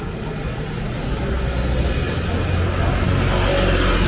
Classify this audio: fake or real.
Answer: real